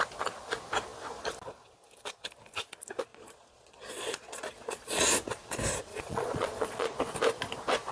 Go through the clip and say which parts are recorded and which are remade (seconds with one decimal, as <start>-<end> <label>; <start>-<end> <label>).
0.0-3.1 recorded; 3.1-5.1 remade; 5.1-5.9 recorded; 5.9-7.0 remade; 7.0-7.9 recorded